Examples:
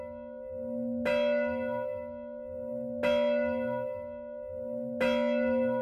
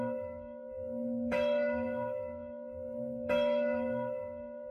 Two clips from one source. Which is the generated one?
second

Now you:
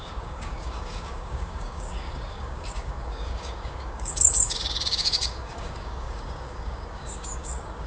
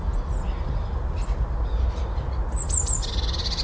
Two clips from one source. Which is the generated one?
first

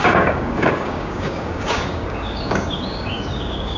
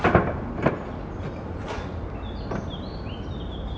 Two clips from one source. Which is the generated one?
first